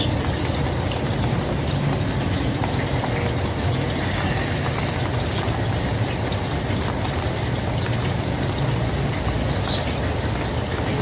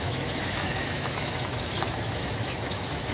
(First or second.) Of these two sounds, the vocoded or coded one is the second